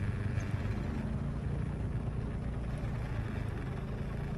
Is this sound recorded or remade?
recorded